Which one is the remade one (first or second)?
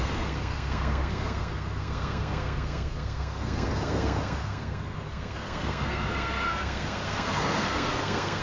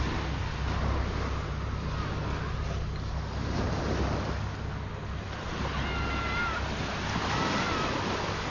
first